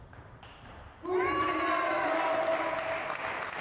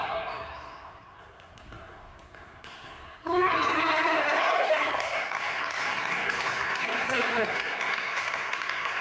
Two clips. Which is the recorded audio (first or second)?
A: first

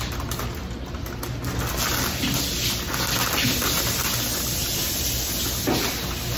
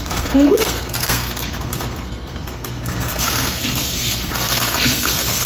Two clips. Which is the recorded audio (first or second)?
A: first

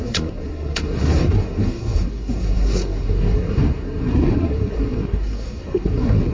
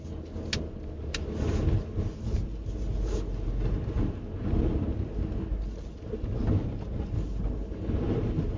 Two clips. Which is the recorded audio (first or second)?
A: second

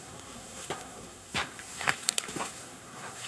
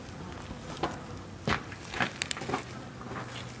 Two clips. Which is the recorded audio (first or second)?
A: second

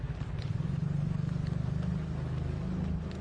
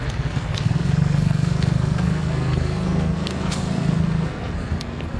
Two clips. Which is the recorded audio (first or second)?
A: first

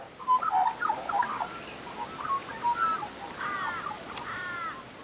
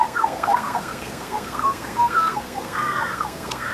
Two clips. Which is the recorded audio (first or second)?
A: first